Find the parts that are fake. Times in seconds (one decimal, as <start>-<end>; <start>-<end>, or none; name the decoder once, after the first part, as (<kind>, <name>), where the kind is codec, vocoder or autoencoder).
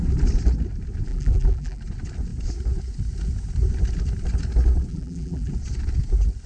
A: 1.1-1.8 (vocoder, BigVGAN v2); 4.9-5.5